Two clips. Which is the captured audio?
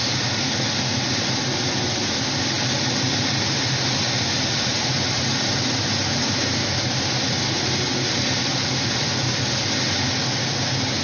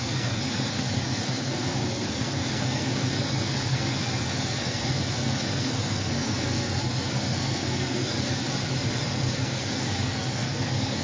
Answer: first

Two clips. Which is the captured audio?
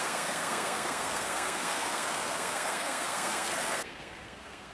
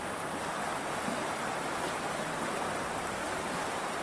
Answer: second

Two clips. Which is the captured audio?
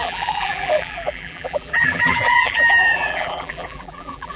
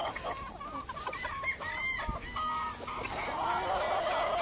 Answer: second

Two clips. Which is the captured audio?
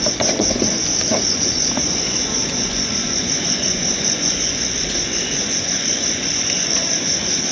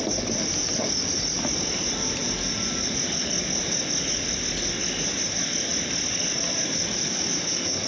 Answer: second